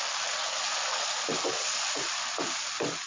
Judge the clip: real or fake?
real